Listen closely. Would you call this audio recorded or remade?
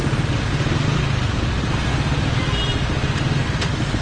recorded